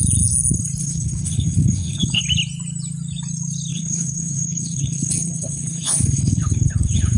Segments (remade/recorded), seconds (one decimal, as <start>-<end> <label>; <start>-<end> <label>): 0.0-0.8 recorded; 0.8-2.2 remade; 2.2-3.7 recorded; 3.7-7.2 remade

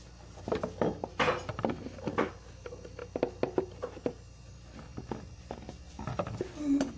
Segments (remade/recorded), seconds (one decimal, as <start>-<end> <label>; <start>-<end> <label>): 0.0-7.0 recorded

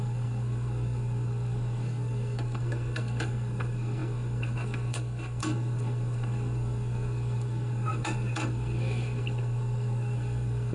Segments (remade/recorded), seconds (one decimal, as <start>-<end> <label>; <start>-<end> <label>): 0.0-10.7 remade

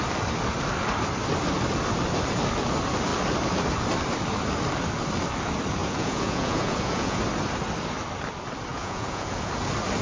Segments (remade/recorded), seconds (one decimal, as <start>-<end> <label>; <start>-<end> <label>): 0.0-5.8 recorded; 5.8-7.2 remade; 7.2-8.7 recorded; 8.7-9.5 remade; 9.5-10.0 recorded

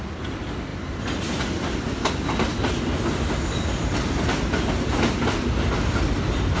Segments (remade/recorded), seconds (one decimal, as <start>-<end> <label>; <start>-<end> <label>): 0.0-6.6 recorded